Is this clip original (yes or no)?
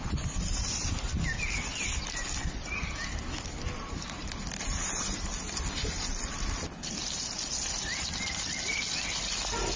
yes